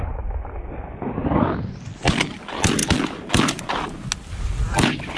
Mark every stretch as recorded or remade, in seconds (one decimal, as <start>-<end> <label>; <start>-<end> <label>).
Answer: 0.0-5.2 recorded